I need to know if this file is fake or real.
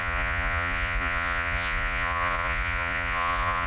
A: fake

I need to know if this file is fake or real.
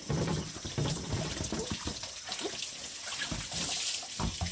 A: real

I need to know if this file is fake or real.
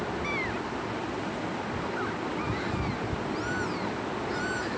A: real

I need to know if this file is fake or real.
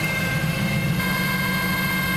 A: real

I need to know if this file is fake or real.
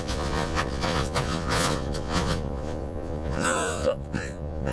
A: fake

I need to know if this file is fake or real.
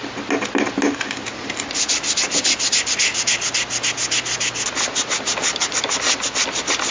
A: real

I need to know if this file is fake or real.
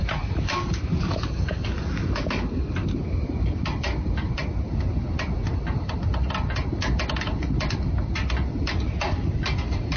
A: real